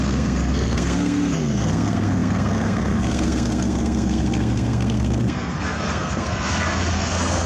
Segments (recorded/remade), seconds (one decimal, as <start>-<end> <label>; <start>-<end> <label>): 0.0-7.5 remade